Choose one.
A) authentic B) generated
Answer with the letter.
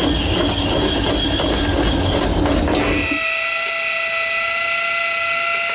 A